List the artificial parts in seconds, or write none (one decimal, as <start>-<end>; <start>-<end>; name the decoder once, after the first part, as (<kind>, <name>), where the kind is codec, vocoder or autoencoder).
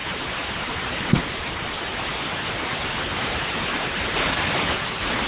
0.0-1.9 (vocoder, BigVGAN v2); 3.7-5.3